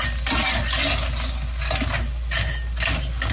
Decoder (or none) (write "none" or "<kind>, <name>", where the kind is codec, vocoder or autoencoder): none